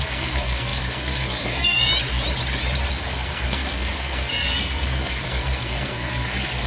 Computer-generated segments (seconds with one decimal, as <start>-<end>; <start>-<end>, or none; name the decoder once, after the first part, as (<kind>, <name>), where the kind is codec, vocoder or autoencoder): 0.0-1.9 (codec, SNAC); 2.9-6.7